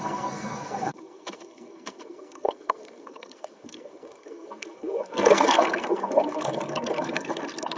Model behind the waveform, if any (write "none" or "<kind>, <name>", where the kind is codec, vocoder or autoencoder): codec, SNAC